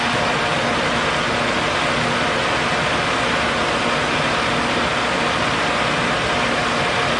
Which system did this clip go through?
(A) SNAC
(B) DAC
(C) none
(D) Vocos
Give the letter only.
C